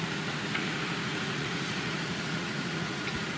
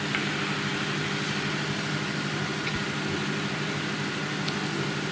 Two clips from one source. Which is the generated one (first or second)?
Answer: first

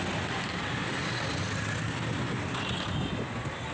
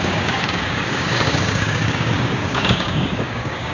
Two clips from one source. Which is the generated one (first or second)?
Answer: second